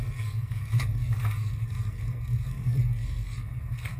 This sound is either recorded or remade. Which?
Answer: remade